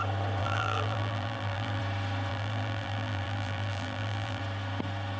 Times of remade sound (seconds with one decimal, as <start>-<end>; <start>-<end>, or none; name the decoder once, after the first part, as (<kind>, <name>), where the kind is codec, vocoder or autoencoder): 0.4-1.8 (vocoder, BigVGAN v2); 2.3-4.4